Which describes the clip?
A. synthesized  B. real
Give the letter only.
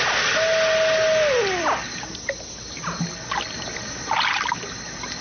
B